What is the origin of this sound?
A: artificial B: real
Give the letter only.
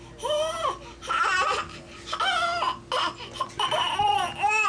B